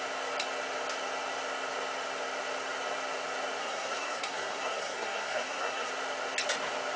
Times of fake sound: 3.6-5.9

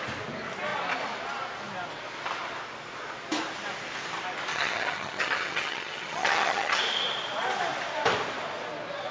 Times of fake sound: 4.5-6.8

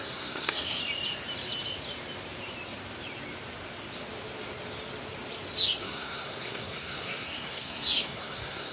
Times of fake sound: 0.0-0.8; 5.8-8.7

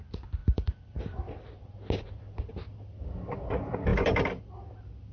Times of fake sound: 0.4-1.0; 3.9-4.4

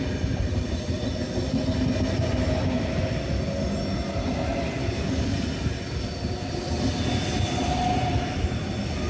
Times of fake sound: 4.8-5.3

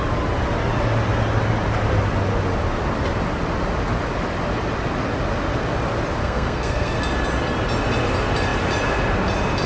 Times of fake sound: 6.2-7.0

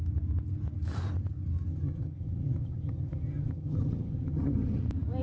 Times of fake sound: 1.7-4.8